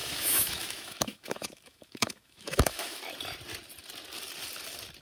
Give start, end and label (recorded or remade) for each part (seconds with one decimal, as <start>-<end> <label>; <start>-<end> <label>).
0.0-3.0 remade; 3.0-5.0 recorded